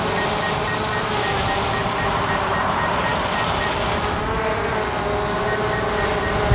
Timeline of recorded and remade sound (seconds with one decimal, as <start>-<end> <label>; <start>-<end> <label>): 0.0-6.5 recorded